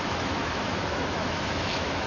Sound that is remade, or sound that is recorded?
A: remade